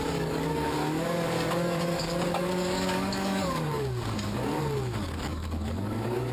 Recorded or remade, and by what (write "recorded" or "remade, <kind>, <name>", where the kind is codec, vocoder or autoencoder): remade, codec, DAC